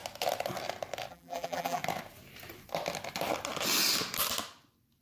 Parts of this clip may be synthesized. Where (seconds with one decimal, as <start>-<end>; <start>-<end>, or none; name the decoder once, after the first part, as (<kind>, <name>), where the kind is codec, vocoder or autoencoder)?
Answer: 1.1-1.8 (vocoder, BigVGAN v2)